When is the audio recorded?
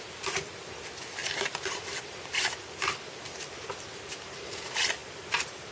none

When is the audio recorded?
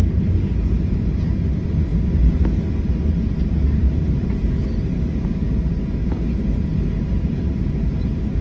1.9-3.1